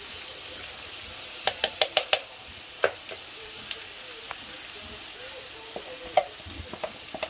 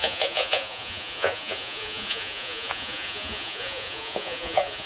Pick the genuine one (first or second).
first